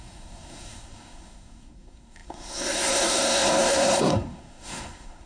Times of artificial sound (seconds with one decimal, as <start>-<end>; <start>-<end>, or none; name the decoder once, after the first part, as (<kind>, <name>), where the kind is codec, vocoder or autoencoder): 0.0-5.3 (codec, SNAC)